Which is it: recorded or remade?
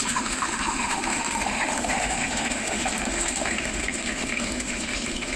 remade